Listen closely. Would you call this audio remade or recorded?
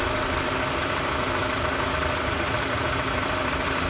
recorded